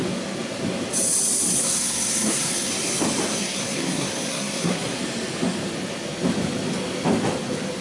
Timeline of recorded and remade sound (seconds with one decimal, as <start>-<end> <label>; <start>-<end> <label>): 0.0-1.6 recorded; 1.6-2.7 remade; 2.7-3.3 recorded; 3.3-5.0 remade; 5.0-7.8 recorded